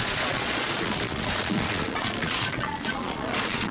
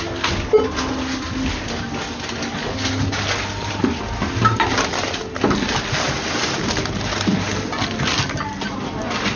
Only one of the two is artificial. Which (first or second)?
first